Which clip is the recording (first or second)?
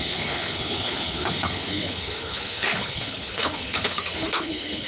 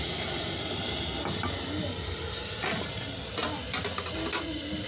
second